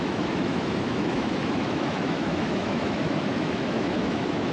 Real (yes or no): no